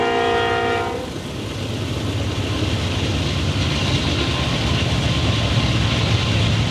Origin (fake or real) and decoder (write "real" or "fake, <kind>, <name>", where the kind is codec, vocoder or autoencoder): real